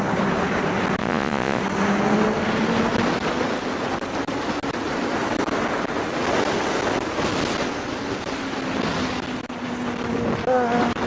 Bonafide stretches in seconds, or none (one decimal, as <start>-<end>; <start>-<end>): 0.0-1.0; 1.6-11.1